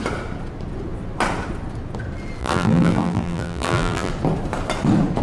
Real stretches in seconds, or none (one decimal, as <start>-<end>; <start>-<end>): 0.0-2.4; 4.1-5.2